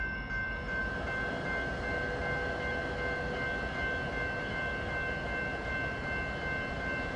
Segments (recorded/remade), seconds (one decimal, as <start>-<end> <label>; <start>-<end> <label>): 0.0-7.2 recorded